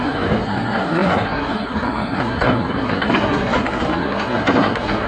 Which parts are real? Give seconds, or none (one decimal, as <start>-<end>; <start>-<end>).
none